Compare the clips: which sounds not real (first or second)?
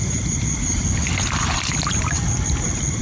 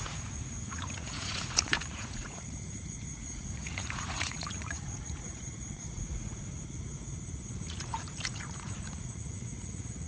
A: second